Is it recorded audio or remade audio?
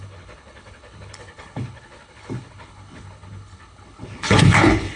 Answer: remade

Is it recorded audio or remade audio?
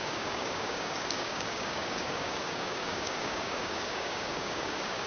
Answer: remade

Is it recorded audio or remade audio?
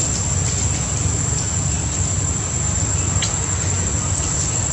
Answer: recorded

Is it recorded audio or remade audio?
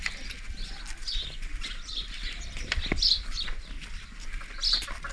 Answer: recorded